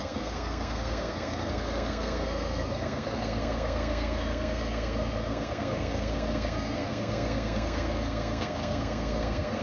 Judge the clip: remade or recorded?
remade